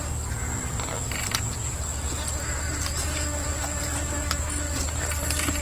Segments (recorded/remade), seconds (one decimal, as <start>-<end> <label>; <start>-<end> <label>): 0.0-5.6 recorded